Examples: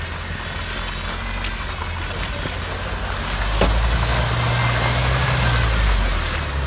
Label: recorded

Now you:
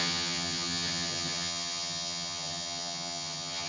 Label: remade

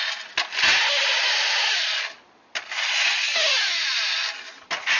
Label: recorded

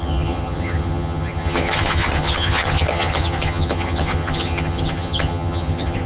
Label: remade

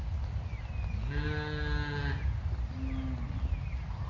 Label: recorded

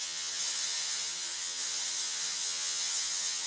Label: remade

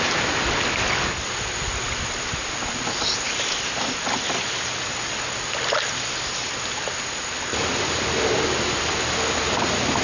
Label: recorded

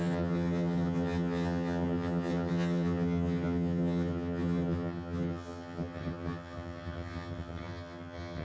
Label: remade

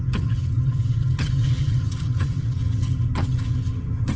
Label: remade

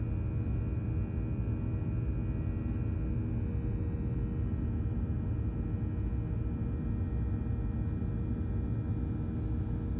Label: recorded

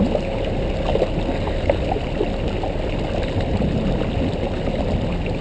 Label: recorded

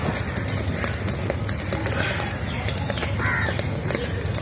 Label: recorded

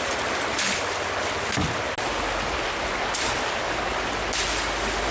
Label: recorded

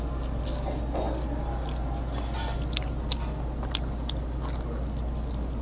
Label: recorded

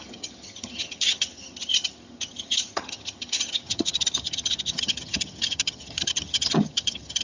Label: remade